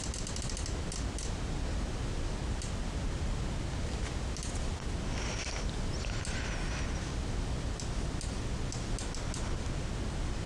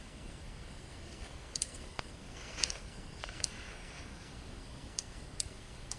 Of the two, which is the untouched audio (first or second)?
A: first